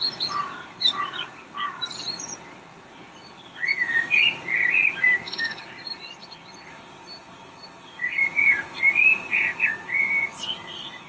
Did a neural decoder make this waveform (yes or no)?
yes